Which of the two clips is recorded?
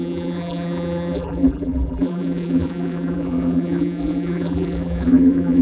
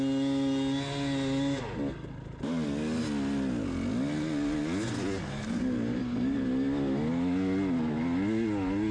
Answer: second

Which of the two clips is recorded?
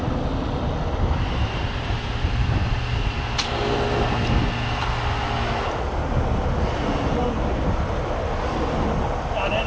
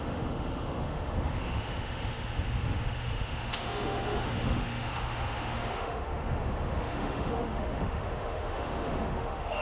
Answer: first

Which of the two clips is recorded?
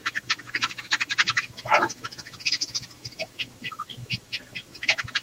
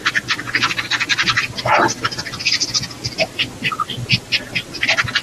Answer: second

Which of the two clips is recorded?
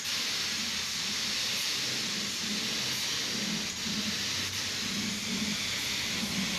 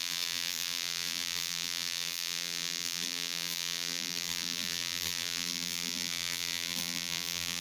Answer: first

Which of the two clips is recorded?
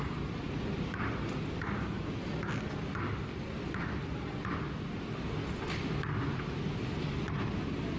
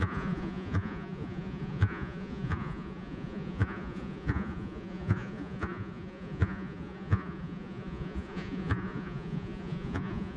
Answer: first